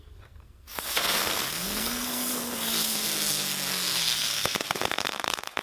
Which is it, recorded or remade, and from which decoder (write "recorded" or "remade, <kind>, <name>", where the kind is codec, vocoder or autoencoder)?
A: remade, codec, SNAC